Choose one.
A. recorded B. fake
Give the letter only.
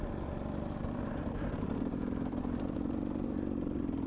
A